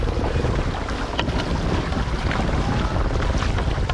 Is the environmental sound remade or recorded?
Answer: recorded